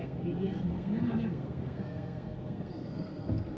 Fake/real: fake